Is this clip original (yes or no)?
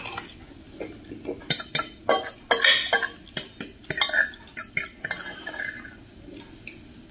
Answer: yes